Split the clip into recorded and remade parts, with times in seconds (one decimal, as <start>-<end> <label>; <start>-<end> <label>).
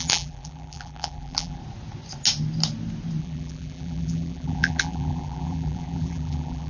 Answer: 0.0-1.6 remade; 1.6-3.2 recorded; 3.2-6.7 remade